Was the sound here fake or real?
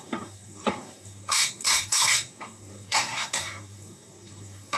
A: fake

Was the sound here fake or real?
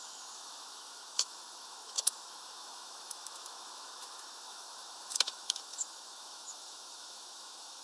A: fake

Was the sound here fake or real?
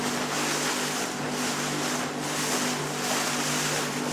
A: real